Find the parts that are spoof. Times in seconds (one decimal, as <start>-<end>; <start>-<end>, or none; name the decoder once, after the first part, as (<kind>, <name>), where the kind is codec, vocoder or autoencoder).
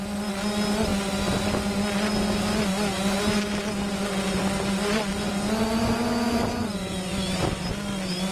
none